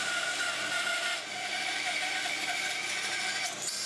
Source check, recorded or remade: recorded